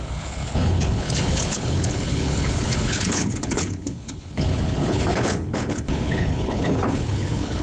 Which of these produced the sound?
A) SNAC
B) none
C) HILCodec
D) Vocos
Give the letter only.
C